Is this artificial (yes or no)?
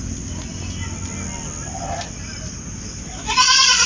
no